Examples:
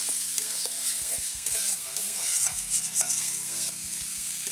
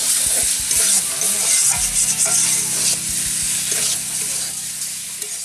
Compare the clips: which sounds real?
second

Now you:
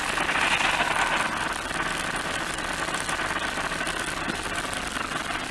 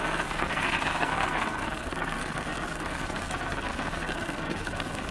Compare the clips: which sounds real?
first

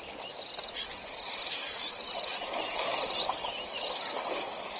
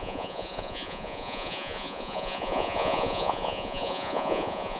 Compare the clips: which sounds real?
first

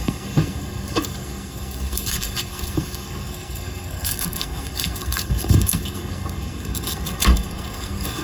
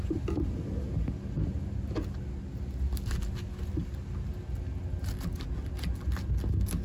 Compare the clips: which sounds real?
second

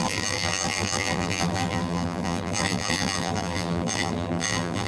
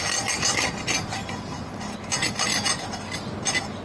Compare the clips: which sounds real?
second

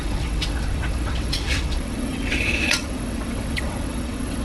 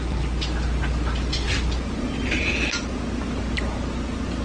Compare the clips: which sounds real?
second